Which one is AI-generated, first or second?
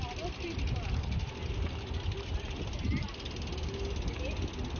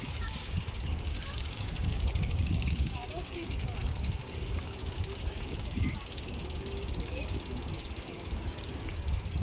second